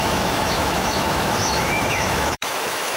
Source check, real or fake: fake